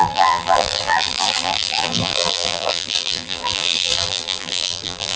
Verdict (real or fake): fake